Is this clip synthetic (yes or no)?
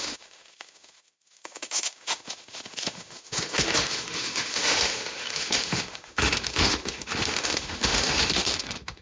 yes